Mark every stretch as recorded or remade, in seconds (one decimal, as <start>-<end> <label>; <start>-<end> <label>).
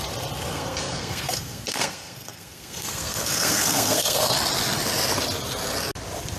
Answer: 0.0-0.5 recorded; 0.5-4.3 remade; 4.3-6.4 recorded